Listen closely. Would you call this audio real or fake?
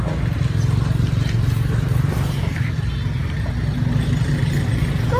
real